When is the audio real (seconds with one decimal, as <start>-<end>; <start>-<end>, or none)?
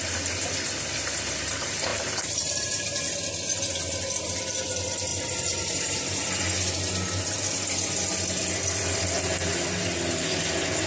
0.0-1.9; 3.0-5.1; 6.4-10.9